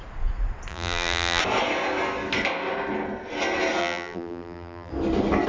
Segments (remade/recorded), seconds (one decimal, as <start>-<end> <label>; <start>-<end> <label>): 0.0-0.7 recorded; 0.7-1.4 remade; 1.4-3.8 recorded; 3.8-4.9 remade; 4.9-5.5 recorded